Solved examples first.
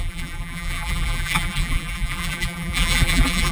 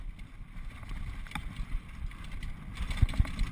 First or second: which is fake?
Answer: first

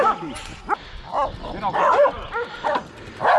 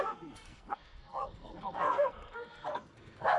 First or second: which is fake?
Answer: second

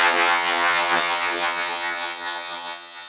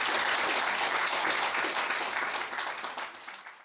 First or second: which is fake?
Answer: first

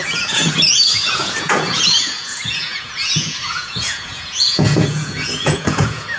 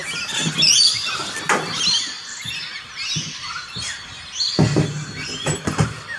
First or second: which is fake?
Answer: first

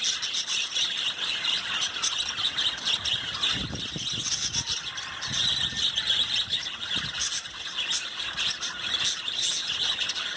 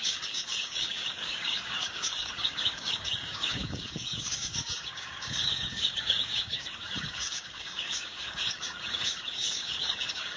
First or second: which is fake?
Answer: second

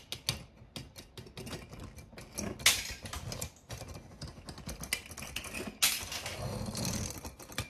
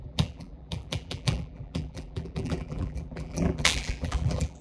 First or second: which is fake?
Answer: second